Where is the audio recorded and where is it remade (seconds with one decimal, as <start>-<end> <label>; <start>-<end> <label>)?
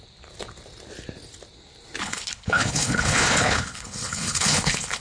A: 0.0-2.0 recorded; 2.0-5.0 remade